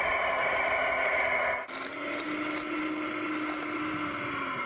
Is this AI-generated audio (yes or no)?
no